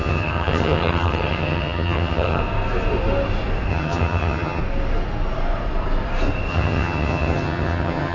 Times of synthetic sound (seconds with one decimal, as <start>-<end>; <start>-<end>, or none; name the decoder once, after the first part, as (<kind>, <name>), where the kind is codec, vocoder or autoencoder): 0.0-2.4 (vocoder, HiFi-GAN); 3.7-4.6; 6.5-8.1